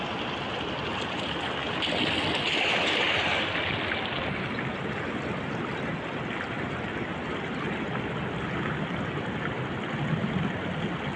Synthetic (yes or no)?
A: no